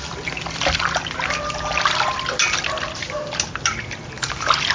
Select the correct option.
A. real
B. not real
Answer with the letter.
A